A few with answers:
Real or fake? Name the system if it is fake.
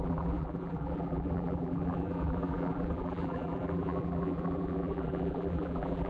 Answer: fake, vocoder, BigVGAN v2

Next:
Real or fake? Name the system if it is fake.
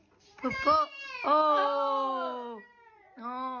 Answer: real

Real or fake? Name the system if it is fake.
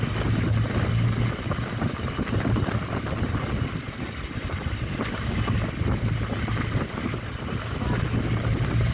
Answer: real